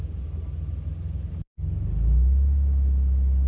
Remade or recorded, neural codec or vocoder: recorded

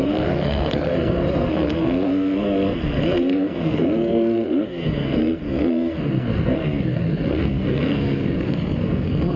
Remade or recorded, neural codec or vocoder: remade, codec, SNAC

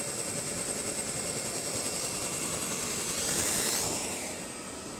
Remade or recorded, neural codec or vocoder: recorded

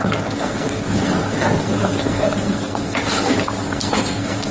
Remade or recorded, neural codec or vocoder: remade, codec, SNAC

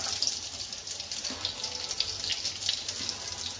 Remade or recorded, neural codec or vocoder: recorded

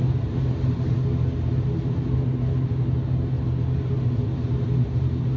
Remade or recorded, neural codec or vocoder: recorded